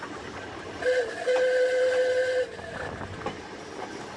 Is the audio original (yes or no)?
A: yes